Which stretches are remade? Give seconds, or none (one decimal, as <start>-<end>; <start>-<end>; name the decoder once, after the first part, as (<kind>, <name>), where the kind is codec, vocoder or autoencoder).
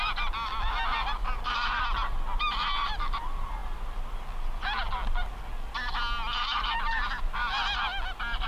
none